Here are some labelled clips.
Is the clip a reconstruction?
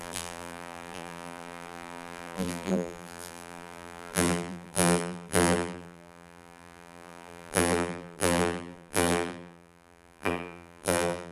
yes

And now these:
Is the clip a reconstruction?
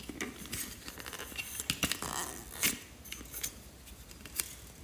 no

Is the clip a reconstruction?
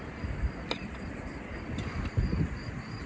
no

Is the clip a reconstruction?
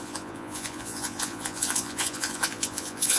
yes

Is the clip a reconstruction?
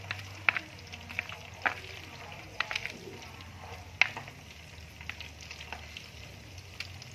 no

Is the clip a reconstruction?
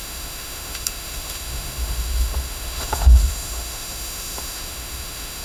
yes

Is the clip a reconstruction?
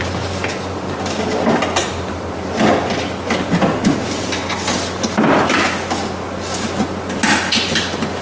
no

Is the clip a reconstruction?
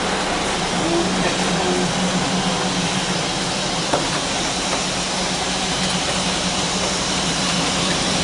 no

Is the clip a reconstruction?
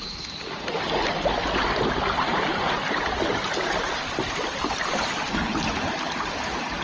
no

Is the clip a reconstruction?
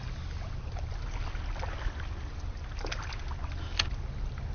no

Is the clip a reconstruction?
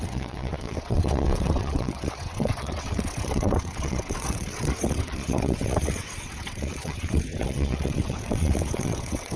yes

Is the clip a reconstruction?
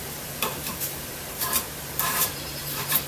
yes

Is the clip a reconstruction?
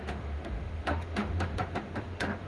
yes